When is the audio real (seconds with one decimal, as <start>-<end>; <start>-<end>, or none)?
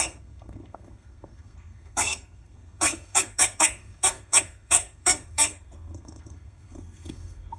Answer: none